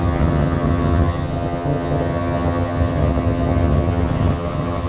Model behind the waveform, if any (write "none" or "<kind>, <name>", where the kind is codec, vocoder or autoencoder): vocoder, HiFi-GAN